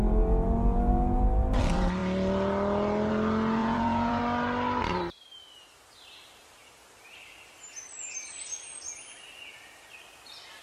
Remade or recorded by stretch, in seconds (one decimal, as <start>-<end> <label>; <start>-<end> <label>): 0.0-3.6 recorded; 3.6-4.2 remade; 4.2-10.6 recorded